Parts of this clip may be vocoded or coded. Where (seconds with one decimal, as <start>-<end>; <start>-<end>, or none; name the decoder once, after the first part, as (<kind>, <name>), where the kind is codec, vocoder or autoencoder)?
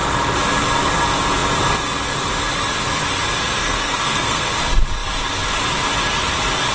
3.6-4.6 (codec, SNAC)